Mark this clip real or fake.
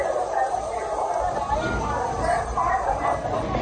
fake